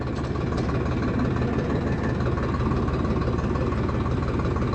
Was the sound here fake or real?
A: real